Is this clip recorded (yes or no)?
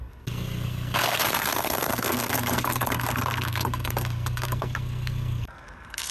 no